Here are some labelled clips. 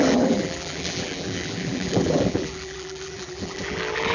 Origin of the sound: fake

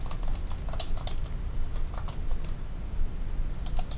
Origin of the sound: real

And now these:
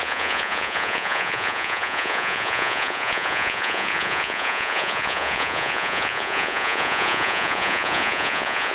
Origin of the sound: fake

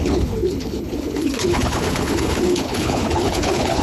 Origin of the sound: fake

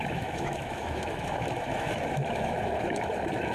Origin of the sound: fake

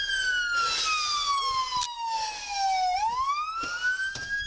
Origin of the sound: real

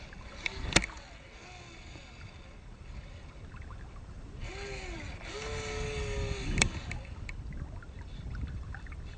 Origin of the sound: fake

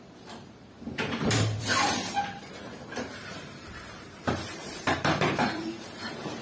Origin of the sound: fake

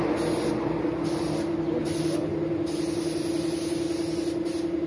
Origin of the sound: real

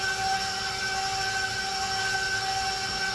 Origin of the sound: real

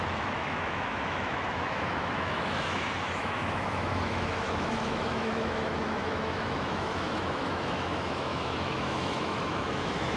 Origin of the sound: fake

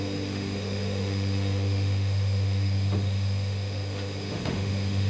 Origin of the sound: fake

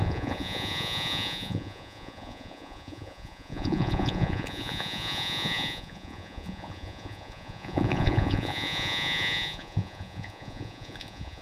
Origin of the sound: fake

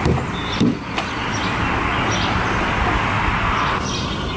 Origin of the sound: real